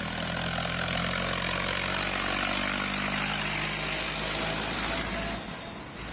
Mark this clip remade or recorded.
recorded